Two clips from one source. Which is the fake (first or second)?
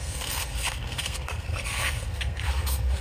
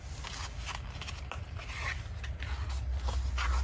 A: first